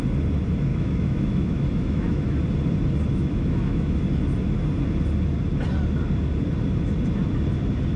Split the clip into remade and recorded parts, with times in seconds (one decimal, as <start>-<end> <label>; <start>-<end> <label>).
0.0-0.7 recorded; 0.7-2.4 remade; 2.4-3.1 recorded; 3.1-4.0 remade; 4.0-8.0 recorded